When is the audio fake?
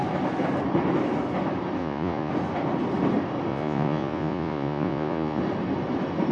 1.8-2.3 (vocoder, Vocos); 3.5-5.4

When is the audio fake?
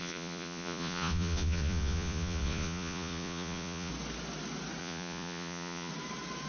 0.0-3.9 (vocoder, Vocos); 4.8-5.9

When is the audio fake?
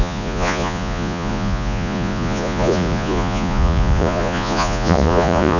0.0-5.6 (vocoder, Vocos)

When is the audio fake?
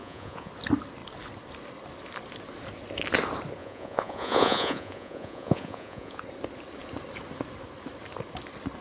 0.0-0.5 (vocoder, Vocos); 3.6-6.2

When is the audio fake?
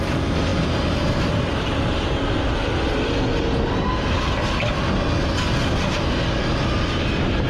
none